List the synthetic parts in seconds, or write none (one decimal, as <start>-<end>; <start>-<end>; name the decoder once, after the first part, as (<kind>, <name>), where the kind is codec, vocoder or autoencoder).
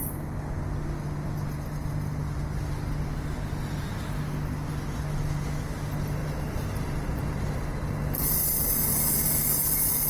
none